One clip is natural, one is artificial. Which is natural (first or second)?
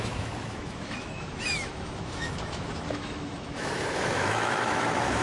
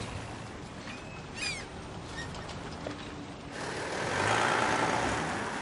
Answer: second